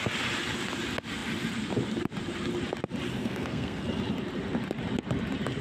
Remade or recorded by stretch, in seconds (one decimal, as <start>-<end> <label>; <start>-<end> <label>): 0.0-3.2 recorded; 3.2-3.8 remade; 3.8-5.6 recorded